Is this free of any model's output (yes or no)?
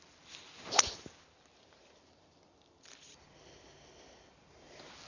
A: yes